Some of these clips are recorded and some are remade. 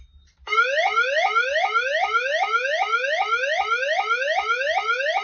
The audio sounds recorded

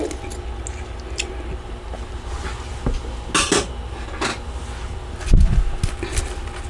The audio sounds recorded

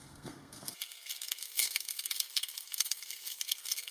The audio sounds remade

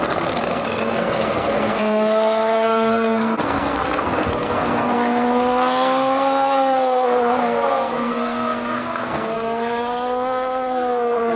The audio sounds remade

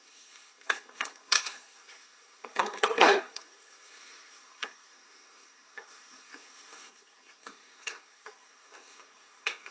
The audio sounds remade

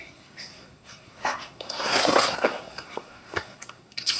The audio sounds remade